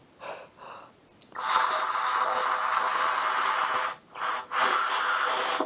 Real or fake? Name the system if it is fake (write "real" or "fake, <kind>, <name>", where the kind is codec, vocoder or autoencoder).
real